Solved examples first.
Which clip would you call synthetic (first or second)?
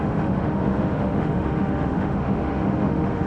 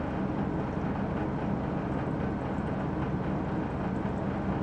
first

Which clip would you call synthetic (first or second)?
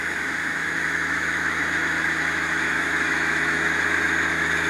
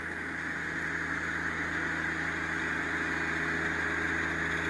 first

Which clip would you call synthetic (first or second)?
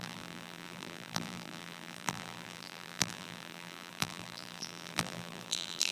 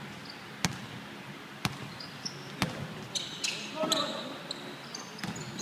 first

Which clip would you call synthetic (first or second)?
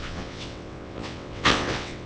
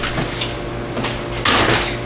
first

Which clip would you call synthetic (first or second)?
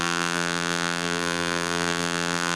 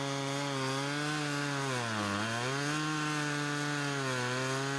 first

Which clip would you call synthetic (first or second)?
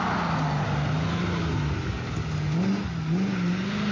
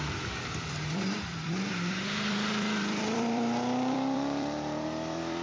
second